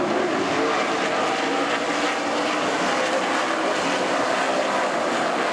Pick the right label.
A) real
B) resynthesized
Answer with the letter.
A